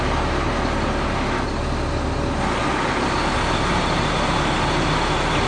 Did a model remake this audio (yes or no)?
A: no